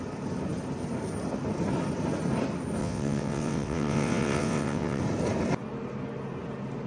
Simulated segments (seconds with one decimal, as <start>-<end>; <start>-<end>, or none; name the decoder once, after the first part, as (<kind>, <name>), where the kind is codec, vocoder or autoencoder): 2.8-5.0 (vocoder, WaveNeXt)